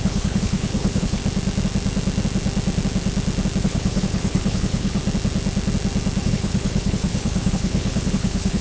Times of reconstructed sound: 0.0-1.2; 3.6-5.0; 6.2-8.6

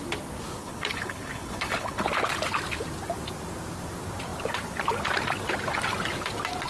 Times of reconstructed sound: 0.6-2.0

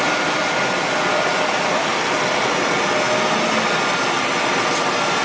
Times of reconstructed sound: none

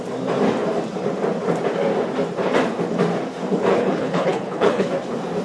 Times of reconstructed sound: 3.7-4.9

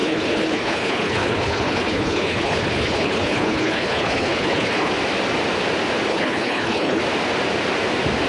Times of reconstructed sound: 0.0-4.9; 6.1-7.0

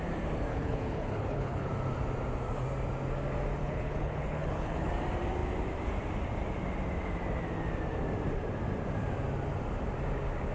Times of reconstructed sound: 0.5-1.7; 3.6-4.9